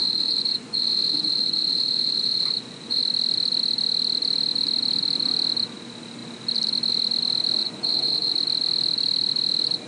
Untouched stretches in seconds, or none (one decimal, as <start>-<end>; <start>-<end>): 3.0-7.6; 8.3-9.9